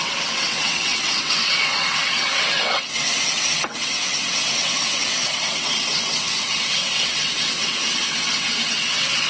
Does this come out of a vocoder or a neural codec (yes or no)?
yes